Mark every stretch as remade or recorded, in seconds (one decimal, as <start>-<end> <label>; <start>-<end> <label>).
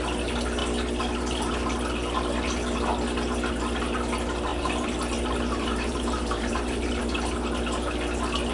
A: 0.0-4.5 recorded; 4.5-7.0 remade; 7.0-8.5 recorded